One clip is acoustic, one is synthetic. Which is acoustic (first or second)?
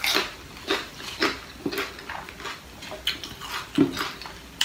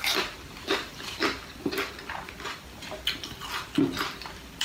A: first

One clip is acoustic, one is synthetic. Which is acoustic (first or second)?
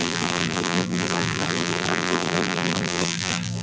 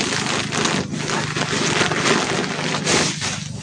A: second